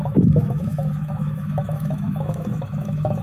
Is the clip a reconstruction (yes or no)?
yes